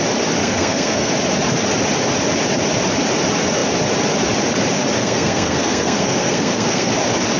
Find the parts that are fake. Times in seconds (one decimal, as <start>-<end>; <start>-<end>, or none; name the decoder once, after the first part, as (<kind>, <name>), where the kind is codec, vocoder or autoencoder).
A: 0.4-1.1 (codec, SNAC); 5.0-6.9